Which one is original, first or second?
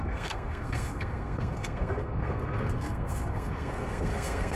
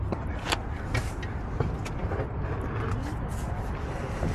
second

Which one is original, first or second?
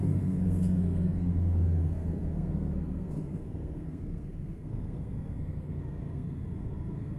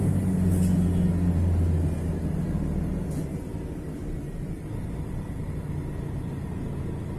second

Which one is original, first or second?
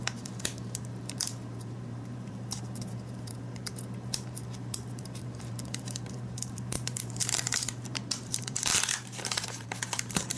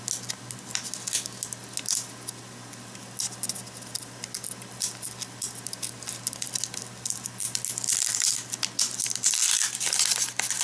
second